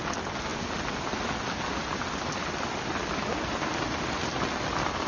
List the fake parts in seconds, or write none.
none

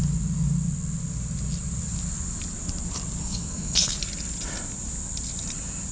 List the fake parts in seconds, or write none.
3.2-4.0 (codec, SNAC)